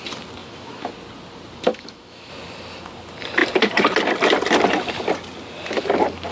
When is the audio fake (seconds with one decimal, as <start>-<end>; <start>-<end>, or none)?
0.4-0.9; 1.7-2.3